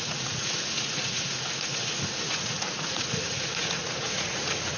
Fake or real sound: fake